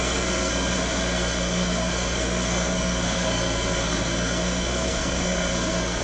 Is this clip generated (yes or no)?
yes